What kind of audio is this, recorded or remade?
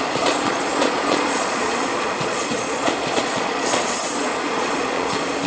remade